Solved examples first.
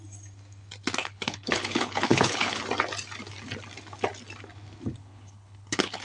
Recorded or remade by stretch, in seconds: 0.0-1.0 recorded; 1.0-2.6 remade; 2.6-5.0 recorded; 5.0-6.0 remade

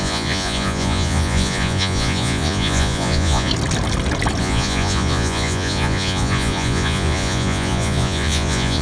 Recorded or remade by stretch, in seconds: 0.0-3.5 remade; 3.5-4.4 recorded; 4.4-8.8 remade

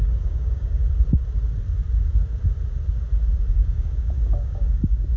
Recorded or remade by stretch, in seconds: 0.0-0.8 remade; 0.8-3.5 recorded; 3.5-5.2 remade

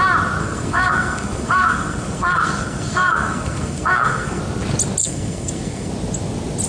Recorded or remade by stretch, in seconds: 0.0-0.4 recorded; 0.4-4.4 remade; 4.4-5.0 recorded; 5.0-5.9 remade; 5.9-6.7 recorded

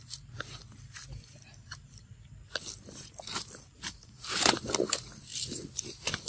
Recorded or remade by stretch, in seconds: 0.0-6.3 recorded

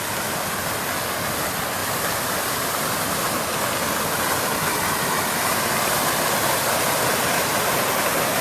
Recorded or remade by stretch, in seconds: 0.0-1.8 recorded; 1.8-3.5 remade; 3.5-7.5 recorded; 7.5-8.4 remade

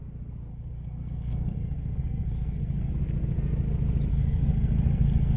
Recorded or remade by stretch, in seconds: 0.0-0.5 recorded; 0.5-2.9 remade; 2.9-4.1 recorded; 4.1-5.4 remade

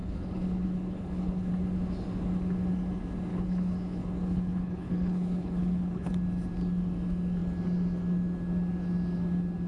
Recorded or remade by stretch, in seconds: 0.0-1.5 remade; 1.5-3.3 recorded; 3.3-6.1 remade; 6.1-9.7 recorded